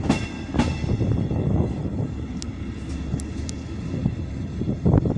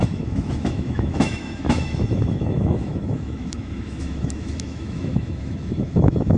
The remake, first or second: second